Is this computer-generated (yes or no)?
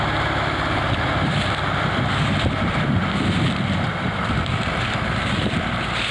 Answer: yes